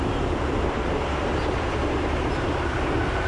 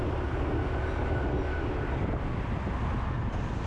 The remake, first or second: first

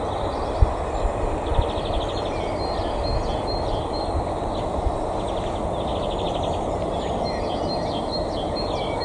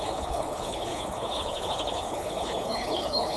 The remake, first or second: second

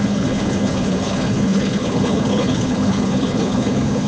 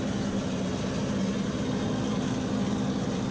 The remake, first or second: first